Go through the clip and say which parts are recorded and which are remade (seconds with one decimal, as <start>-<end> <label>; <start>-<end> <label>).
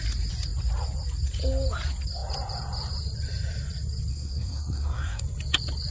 0.0-4.1 recorded; 4.1-5.2 remade; 5.2-5.9 recorded